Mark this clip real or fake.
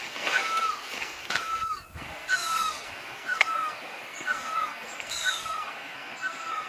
fake